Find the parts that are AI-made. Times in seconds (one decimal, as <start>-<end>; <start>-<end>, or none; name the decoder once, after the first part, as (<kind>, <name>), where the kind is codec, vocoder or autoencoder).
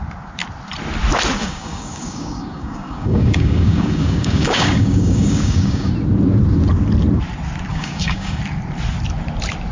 1.4-5.9 (codec, DAC); 7.7-8.4